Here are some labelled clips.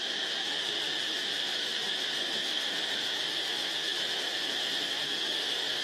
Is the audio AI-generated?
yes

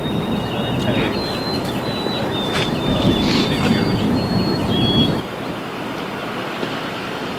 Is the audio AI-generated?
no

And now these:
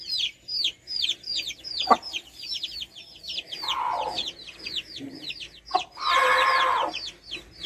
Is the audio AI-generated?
no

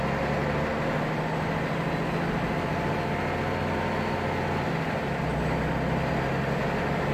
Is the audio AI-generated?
no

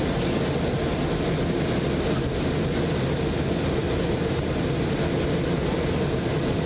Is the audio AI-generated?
no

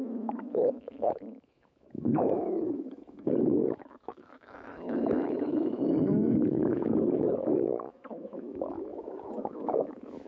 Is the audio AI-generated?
yes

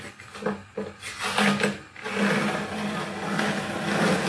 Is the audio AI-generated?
no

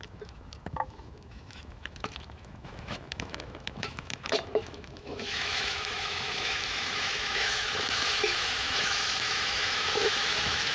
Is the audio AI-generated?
yes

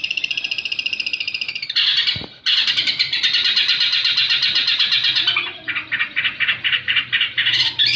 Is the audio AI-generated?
no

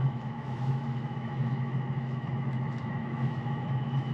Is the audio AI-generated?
yes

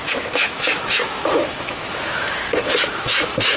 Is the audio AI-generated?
yes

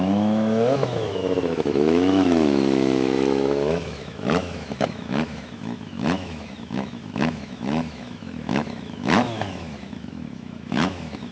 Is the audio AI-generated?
yes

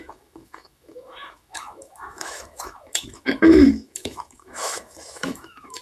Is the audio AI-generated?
yes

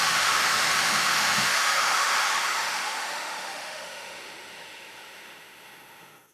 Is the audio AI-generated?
yes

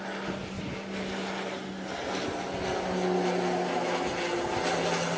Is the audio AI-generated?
no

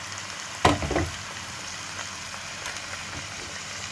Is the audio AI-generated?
no